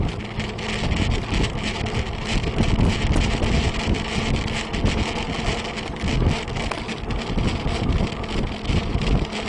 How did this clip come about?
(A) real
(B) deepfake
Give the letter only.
A